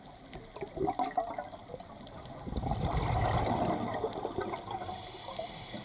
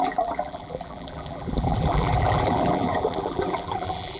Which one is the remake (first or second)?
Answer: second